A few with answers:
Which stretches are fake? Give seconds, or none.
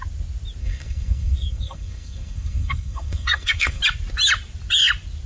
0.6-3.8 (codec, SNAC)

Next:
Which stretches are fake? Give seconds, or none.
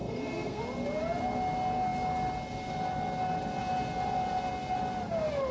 0.0-0.6 (codec, SNAC)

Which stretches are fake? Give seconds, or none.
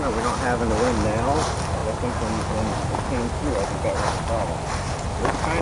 none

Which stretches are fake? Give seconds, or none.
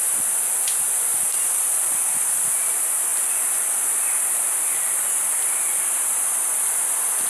none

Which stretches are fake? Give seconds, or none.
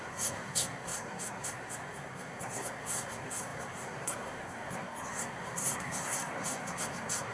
0.0-7.3 (codec, SNAC)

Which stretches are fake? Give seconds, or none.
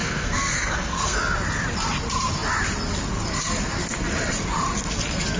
0.0-1.2 (codec, SNAC)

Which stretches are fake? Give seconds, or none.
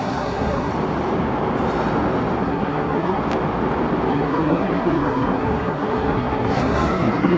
0.0-0.7 (codec, SNAC); 2.4-3.2; 4.1-7.4